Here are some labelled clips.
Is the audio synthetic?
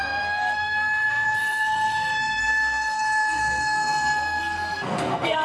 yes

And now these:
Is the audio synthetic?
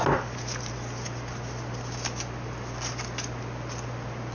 no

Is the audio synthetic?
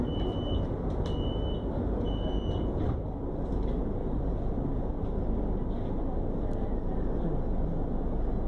no